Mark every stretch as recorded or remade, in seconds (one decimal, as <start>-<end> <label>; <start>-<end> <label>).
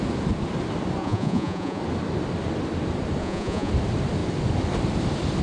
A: 0.0-1.0 recorded; 1.0-1.8 remade; 1.8-3.2 recorded; 3.2-3.7 remade; 3.7-5.4 recorded